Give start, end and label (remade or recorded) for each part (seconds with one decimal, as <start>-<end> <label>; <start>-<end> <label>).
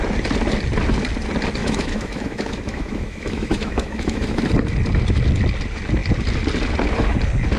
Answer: 0.0-1.6 recorded; 1.6-4.4 remade; 4.4-7.6 recorded